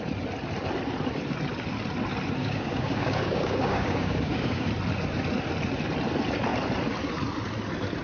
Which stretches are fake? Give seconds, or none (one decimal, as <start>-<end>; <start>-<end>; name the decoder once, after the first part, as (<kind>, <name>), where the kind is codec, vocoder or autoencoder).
2.4-4.7 (codec, DAC)